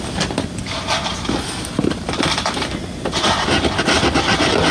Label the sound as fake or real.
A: real